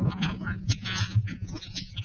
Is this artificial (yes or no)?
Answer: yes